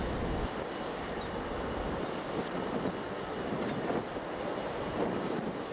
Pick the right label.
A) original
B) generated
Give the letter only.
A